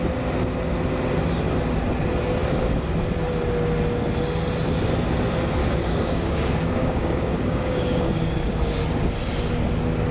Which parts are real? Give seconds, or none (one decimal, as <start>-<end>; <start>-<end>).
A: 0.0-5.6; 8.8-10.1